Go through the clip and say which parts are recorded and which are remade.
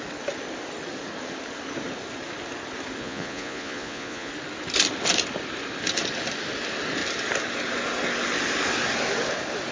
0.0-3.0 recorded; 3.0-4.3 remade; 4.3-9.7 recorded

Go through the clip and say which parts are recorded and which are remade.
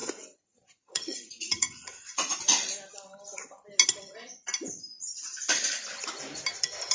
0.0-2.4 remade; 2.4-6.9 recorded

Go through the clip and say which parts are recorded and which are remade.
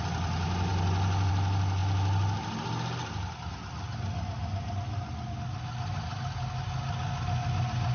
0.0-7.9 recorded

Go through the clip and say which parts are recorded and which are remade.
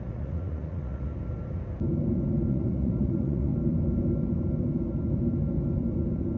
0.0-1.1 remade; 1.1-2.5 recorded; 2.5-3.5 remade; 3.5-6.4 recorded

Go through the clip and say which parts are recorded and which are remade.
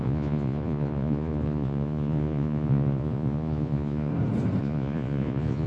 0.0-4.1 remade; 4.1-4.6 recorded; 4.6-5.7 remade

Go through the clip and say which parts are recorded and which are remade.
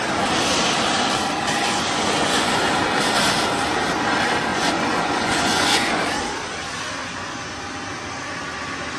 0.0-1.6 recorded; 1.6-2.6 remade; 2.6-4.5 recorded; 4.5-6.0 remade; 6.0-7.0 recorded; 7.0-7.6 remade; 7.6-9.0 recorded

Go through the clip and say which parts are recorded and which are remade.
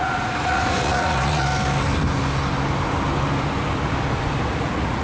0.0-1.5 remade; 1.5-4.5 recorded; 4.5-5.0 remade